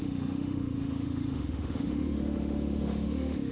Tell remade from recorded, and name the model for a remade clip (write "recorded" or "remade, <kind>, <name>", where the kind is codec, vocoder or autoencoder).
remade, autoencoder, DAC-VAE